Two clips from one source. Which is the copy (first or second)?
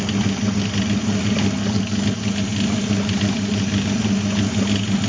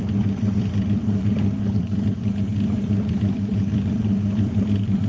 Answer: second